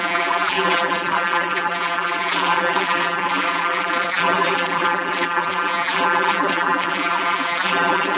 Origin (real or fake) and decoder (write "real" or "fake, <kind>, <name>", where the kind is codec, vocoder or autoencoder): fake, vocoder, BigVGAN v2